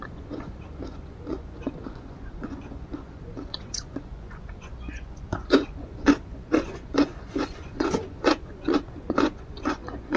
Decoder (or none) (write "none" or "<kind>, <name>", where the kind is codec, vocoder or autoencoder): vocoder, Vocos